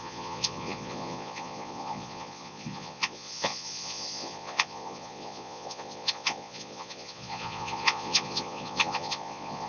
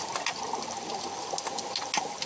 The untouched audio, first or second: second